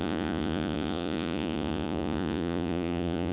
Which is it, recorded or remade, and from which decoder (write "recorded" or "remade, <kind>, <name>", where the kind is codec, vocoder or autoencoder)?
remade, vocoder, Vocos